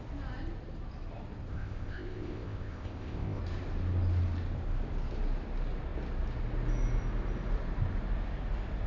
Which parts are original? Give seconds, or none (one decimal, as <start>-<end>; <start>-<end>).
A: 0.0-1.5; 3.4-8.9